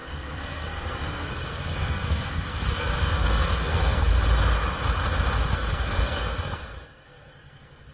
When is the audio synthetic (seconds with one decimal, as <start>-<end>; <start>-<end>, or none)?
0.0-4.1; 5.5-7.9